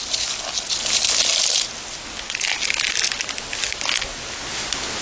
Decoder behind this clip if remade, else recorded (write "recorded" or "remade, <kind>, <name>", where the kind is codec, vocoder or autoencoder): recorded